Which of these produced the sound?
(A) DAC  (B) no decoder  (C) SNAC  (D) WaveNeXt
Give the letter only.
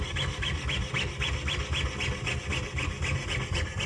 B